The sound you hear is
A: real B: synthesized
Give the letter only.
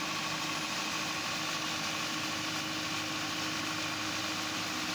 A